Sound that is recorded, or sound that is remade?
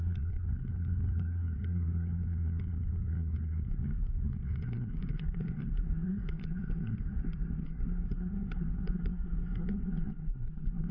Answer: remade